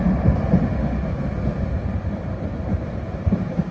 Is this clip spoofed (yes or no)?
no